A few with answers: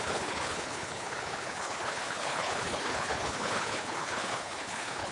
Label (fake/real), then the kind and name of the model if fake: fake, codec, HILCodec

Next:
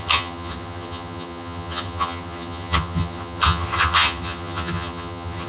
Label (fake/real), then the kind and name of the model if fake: fake, vocoder, HiFi-GAN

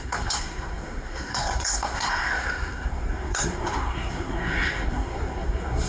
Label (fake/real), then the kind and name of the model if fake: fake, codec, SNAC